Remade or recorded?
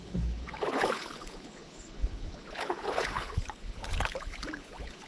remade